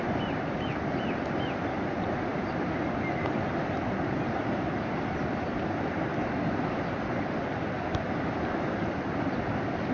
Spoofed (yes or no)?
no